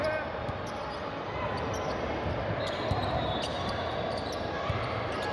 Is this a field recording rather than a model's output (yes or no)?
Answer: yes